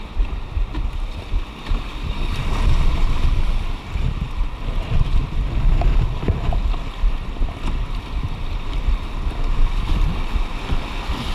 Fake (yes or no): no